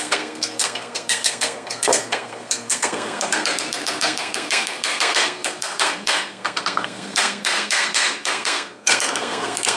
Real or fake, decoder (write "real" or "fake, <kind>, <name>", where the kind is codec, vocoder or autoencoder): fake, codec, SNAC